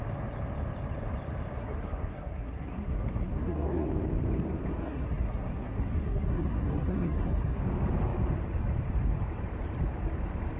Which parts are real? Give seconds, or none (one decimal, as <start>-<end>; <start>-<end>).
0.0-1.6; 3.9-4.8; 7.6-10.6